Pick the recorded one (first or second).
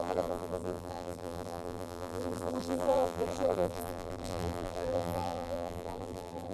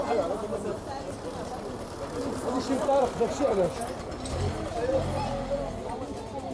second